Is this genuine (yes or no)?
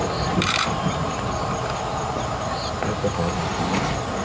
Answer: yes